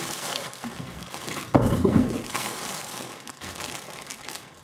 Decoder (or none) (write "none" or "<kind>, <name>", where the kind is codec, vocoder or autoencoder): codec, SNAC